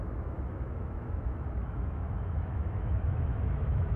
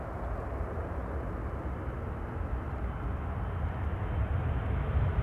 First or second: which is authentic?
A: second